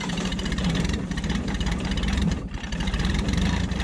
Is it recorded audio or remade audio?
remade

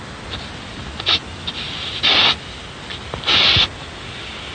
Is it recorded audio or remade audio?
recorded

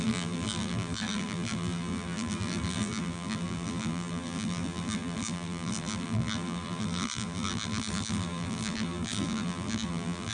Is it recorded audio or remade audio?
remade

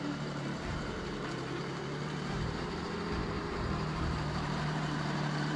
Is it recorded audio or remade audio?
remade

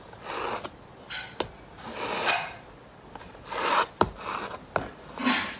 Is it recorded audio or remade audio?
recorded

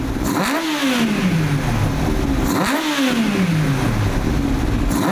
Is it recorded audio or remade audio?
recorded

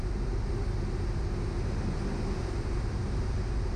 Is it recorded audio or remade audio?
recorded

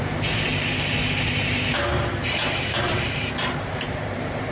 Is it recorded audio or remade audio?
remade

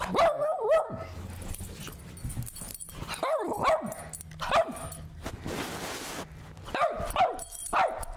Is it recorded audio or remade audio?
recorded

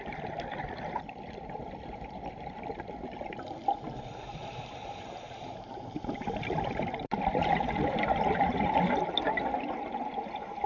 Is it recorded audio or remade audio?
remade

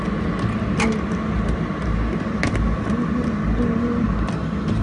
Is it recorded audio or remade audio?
recorded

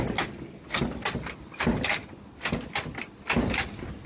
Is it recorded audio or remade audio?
recorded